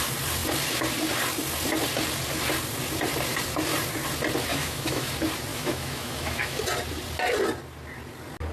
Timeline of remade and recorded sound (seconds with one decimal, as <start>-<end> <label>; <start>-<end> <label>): 0.0-4.5 recorded; 4.5-5.1 remade; 5.1-5.5 recorded; 5.5-6.6 remade; 6.6-8.5 recorded